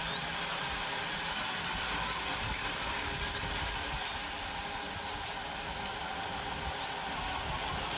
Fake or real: real